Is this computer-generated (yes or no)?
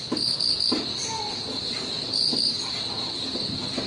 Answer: no